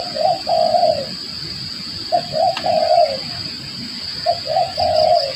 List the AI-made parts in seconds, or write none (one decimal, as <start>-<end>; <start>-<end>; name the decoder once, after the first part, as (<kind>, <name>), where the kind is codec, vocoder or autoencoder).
none